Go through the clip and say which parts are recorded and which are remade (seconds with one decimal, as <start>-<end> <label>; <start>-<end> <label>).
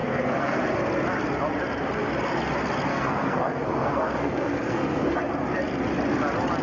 0.0-0.6 remade; 0.6-2.9 recorded; 2.9-5.2 remade; 5.2-6.6 recorded